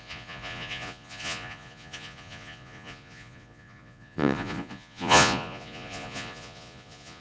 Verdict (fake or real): fake